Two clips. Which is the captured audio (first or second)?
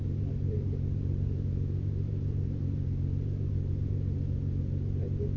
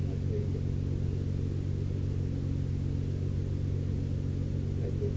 second